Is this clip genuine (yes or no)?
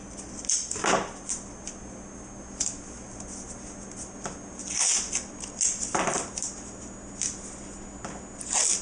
yes